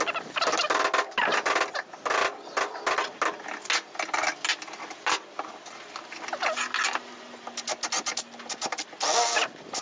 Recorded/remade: recorded